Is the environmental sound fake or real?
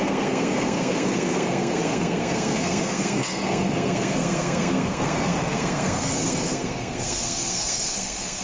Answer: fake